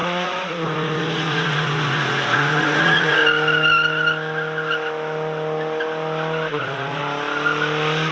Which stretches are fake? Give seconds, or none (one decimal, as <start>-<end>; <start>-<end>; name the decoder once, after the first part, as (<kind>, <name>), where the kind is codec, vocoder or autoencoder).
0.0-3.2 (vocoder, Vocos); 6.6-7.0